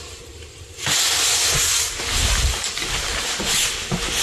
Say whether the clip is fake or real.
real